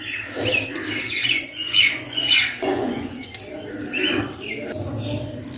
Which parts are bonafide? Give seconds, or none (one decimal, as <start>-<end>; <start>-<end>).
0.0-1.2; 3.3-5.6